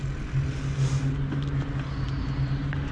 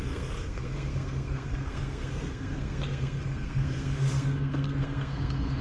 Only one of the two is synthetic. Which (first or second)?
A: second